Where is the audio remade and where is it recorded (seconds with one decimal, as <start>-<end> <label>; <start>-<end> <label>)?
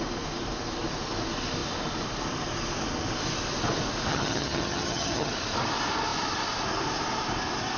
0.0-4.1 recorded; 4.1-5.3 remade; 5.3-7.8 recorded